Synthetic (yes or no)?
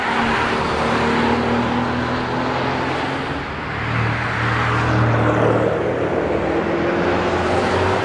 no